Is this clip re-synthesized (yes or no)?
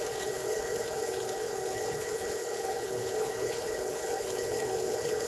yes